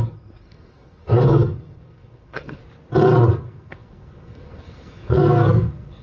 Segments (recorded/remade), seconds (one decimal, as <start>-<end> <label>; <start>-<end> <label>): 0.0-2.6 remade; 2.6-3.3 recorded; 3.3-6.0 remade